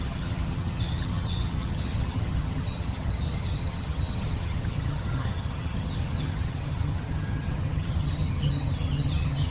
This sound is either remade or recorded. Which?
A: remade